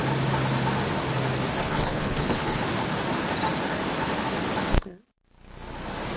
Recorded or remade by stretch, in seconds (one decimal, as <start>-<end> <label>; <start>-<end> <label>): 0.0-1.6 recorded; 1.6-2.6 remade; 2.6-6.2 recorded